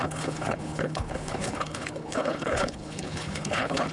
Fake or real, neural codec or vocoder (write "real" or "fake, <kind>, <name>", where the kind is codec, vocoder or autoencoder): fake, codec, HILCodec